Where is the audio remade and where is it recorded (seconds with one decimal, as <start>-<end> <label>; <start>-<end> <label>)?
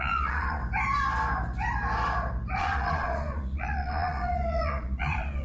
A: 0.0-0.6 remade; 0.6-2.6 recorded; 2.6-5.4 remade